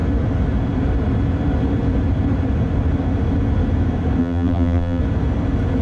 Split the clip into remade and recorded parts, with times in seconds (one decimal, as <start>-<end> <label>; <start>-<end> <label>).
0.0-4.2 recorded; 4.2-5.0 remade; 5.0-5.8 recorded